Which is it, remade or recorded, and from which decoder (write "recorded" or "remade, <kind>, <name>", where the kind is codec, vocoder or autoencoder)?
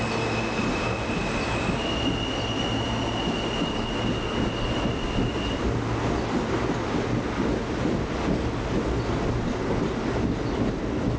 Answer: recorded